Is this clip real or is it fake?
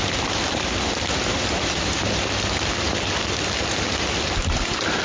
fake